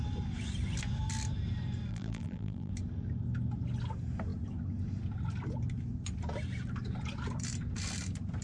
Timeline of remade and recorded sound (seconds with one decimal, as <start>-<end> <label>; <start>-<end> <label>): 0.0-1.9 recorded; 1.9-2.7 remade; 2.7-8.4 recorded

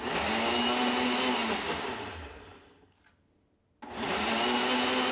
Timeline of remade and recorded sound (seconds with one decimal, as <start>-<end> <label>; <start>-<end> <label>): 0.0-5.1 recorded

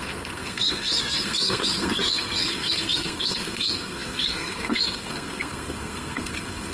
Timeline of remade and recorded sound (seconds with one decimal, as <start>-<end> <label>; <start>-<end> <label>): 0.0-6.7 remade

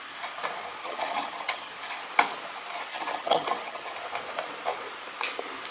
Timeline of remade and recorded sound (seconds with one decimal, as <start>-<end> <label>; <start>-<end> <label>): 0.0-0.8 recorded; 0.8-1.7 remade; 1.7-2.9 recorded; 2.9-3.9 remade; 3.9-5.7 recorded

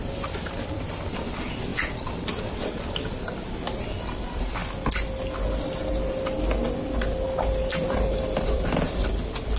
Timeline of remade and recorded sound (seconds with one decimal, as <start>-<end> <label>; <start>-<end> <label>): 0.0-4.6 remade; 4.6-7.6 recorded; 7.6-9.6 remade

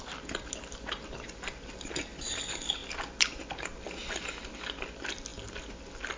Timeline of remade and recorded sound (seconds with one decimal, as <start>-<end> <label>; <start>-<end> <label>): 0.0-6.2 recorded

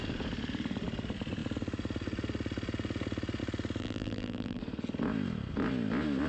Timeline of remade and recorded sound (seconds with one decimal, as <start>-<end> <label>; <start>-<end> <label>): 0.0-3.8 recorded; 3.8-4.6 remade; 4.6-6.3 recorded